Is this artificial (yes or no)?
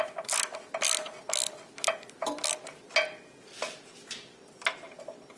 no